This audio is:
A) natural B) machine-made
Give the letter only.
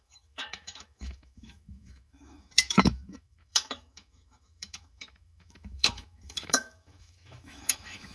B